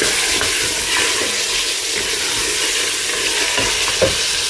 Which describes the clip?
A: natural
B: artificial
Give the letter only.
A